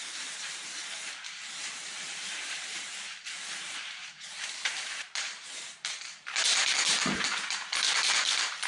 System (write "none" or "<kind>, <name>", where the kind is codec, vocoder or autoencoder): vocoder, BigVGAN v2